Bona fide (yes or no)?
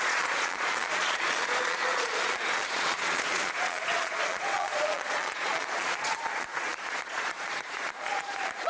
no